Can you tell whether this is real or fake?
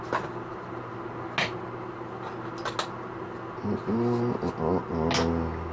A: real